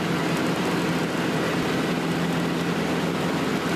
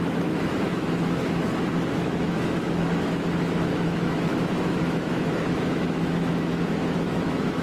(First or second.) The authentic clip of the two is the first